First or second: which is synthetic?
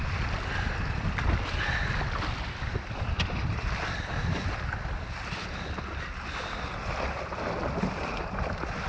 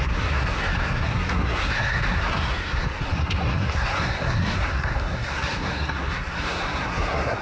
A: second